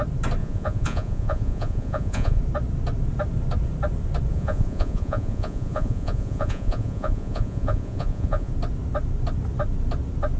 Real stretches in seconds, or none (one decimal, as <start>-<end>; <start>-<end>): 0.0-0.4; 2.4-4.3; 8.5-10.4